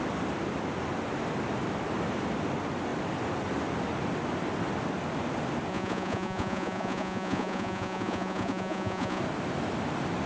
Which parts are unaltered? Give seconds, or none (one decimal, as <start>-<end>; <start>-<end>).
0.0-5.7; 9.2-10.3